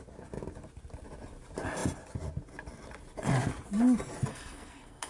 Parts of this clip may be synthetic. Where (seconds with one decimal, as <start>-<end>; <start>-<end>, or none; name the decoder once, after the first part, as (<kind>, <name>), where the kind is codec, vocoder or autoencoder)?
4.3-5.1 (codec, SNAC)